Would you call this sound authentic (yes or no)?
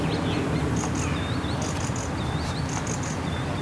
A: yes